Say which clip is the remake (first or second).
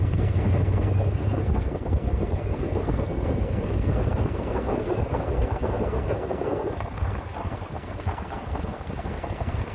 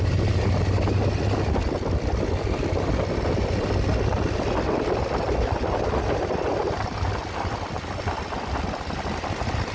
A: first